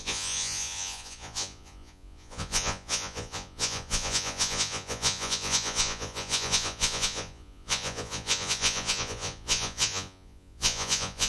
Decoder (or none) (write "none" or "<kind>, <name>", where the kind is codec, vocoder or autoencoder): vocoder, Vocos